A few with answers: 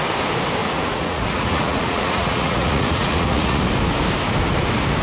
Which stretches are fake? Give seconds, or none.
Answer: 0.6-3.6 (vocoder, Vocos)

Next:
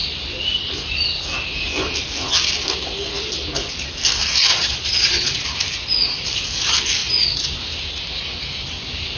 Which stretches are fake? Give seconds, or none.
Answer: 4.5-5.4 (vocoder, Vocos)

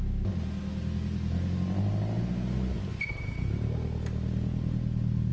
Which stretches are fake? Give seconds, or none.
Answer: none